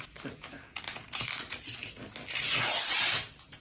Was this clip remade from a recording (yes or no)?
no